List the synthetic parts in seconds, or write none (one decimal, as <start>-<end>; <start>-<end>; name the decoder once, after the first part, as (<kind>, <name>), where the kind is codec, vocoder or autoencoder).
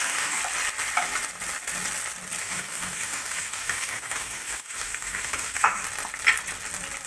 0.0-0.4 (codec, DAC); 2.4-5.8